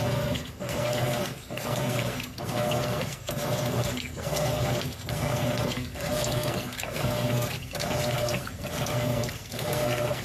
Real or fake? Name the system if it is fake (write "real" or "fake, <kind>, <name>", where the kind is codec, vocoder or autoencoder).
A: fake, codec, SNAC